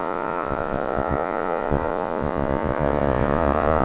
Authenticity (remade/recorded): remade